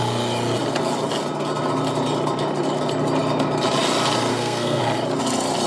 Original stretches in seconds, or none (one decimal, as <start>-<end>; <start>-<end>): 0.0-4.3; 4.8-5.7